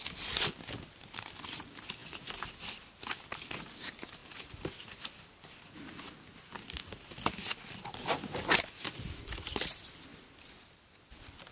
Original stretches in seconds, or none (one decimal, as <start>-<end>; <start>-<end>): 0.0-2.0; 3.6-4.2; 5.2-10.1; 11.0-11.5